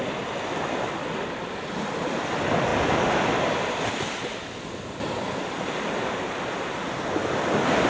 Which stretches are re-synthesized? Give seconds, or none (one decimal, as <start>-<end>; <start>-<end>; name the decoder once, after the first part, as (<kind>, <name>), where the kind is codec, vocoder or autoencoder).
none